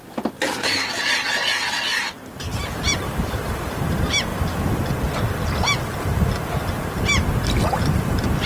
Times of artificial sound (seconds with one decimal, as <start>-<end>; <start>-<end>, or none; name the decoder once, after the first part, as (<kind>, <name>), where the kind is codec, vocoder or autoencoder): 1.9-3.8 (vocoder, BigVGAN v2)